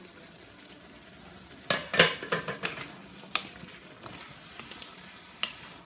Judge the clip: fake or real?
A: real